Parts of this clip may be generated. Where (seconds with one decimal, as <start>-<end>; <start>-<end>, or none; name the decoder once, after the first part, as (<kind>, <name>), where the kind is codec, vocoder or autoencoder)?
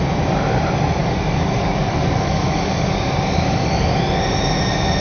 1.0-4.0 (codec, DAC)